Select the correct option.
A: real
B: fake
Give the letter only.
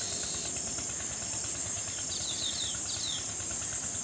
A